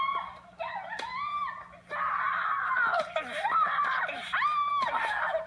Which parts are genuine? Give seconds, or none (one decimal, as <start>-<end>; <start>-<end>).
0.0-5.5